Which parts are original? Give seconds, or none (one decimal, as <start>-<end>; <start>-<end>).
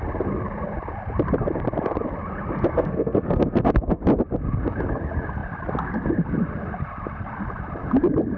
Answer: 0.0-2.7; 4.0-8.4